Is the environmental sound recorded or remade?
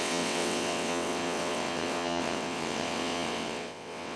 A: remade